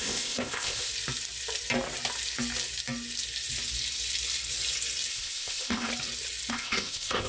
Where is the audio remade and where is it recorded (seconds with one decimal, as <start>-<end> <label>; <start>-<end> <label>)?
0.0-0.9 remade; 0.9-5.1 recorded; 5.1-5.9 remade; 5.9-6.5 recorded; 6.5-7.3 remade